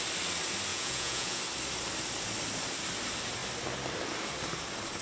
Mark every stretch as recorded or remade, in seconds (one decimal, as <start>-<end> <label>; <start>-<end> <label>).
0.0-0.7 recorded; 0.7-1.4 remade; 1.4-5.0 recorded

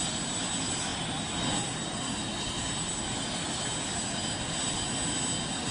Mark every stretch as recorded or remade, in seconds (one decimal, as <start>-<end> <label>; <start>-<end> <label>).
0.0-5.7 recorded